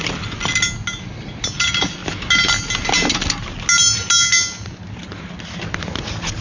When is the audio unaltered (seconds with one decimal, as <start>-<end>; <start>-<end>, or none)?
0.0-6.4